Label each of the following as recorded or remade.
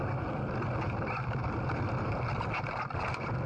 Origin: recorded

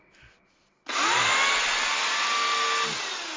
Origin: recorded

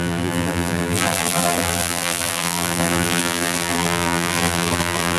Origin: remade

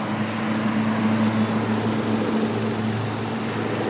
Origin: recorded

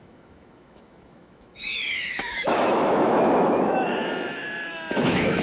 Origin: remade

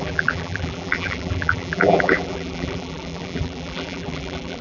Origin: remade